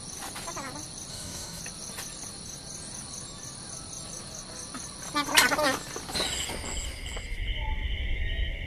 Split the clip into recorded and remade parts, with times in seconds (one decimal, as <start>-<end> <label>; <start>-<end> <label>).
0.0-1.1 recorded; 1.1-1.6 remade; 1.6-8.7 recorded

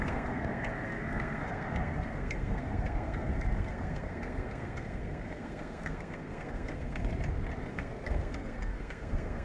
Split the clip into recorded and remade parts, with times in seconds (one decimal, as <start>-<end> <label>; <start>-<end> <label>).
0.0-7.1 remade; 7.1-7.7 recorded; 7.7-9.4 remade

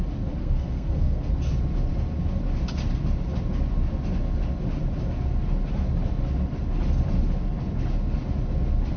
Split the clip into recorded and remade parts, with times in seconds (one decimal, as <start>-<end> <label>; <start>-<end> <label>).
0.0-0.4 recorded; 0.4-1.3 remade; 1.3-9.0 recorded

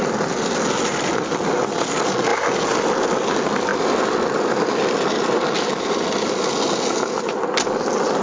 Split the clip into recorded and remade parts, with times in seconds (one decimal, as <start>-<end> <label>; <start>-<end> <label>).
0.0-8.2 recorded

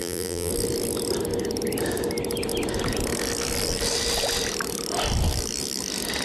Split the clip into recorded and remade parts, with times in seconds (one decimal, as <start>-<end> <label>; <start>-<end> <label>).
0.0-0.5 remade; 0.5-6.2 recorded